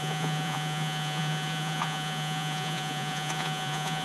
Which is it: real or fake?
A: fake